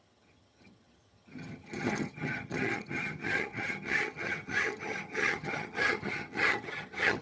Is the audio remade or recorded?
remade